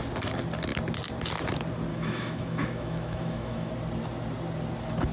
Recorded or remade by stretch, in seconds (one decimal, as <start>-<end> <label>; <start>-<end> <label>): 0.0-1.9 recorded; 1.9-3.7 remade; 3.7-5.1 recorded